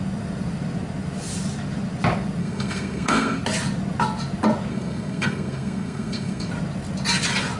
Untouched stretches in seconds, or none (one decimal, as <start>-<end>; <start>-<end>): 0.0-2.4; 3.4-4.7; 6.5-7.6